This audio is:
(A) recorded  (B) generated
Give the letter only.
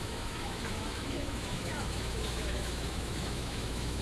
B